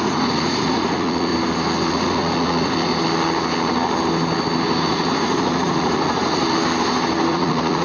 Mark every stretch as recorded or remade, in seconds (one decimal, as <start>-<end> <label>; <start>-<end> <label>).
0.0-1.3 remade; 1.3-1.9 recorded; 1.9-2.9 remade; 2.9-4.8 recorded; 4.8-6.4 remade; 6.4-7.3 recorded; 7.3-7.8 remade